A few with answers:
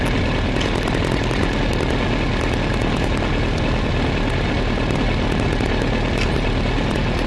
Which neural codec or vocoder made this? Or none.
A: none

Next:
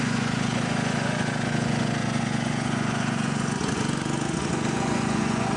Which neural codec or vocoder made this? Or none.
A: vocoder, Vocos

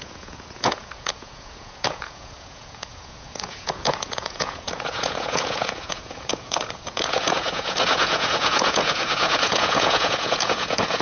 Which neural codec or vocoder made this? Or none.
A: vocoder, Vocos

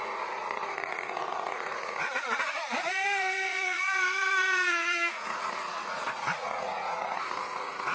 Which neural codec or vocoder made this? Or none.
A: vocoder, Vocos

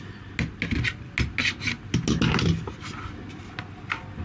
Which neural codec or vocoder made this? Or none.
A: none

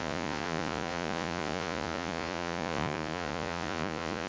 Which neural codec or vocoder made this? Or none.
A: vocoder, Vocos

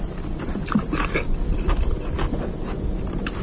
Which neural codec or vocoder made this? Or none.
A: none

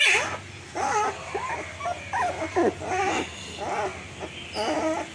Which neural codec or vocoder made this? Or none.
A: none